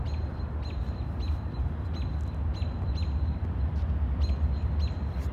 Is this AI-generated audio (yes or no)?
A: no